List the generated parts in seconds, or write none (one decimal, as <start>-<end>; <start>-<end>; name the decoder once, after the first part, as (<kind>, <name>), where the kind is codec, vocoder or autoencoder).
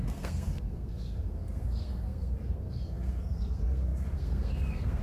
0.0-5.0 (codec, SNAC)